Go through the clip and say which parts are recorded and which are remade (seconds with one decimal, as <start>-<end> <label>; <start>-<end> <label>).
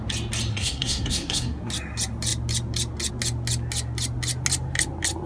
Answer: 0.0-0.5 recorded; 0.5-1.7 remade; 1.7-5.3 recorded